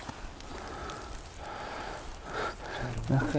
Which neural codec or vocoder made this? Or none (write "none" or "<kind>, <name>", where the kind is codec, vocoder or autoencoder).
none